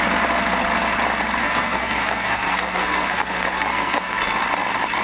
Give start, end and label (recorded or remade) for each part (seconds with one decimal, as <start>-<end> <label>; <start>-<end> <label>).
0.0-1.4 recorded; 1.4-4.4 remade; 4.4-5.0 recorded